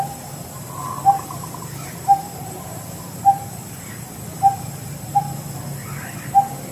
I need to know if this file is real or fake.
fake